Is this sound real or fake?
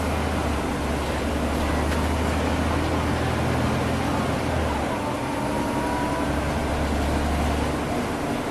real